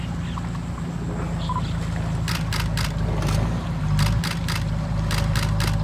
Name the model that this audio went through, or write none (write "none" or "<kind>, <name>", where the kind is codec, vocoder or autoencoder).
none